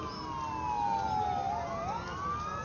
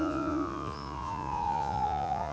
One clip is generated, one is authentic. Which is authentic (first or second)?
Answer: first